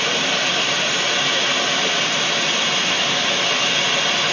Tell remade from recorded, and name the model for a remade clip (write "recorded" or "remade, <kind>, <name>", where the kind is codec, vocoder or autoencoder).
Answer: recorded